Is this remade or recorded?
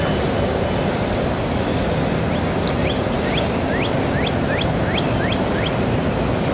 recorded